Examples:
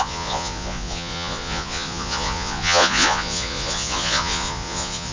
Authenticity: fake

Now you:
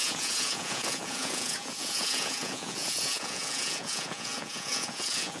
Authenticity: fake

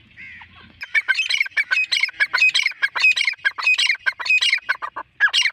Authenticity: real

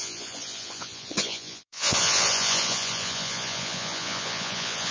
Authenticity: fake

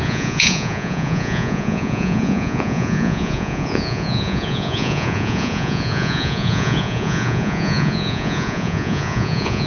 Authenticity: fake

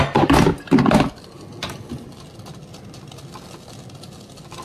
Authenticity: real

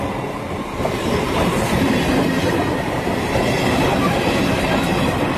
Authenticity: real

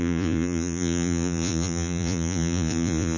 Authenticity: fake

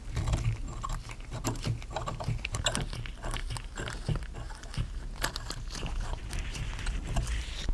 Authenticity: real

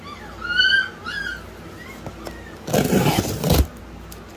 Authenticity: real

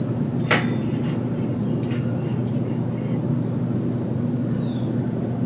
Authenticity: real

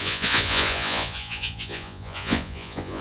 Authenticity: fake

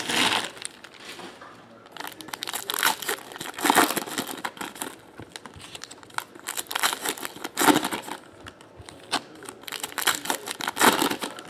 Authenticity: real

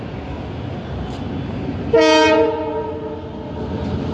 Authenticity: real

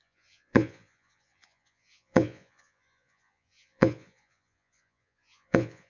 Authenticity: fake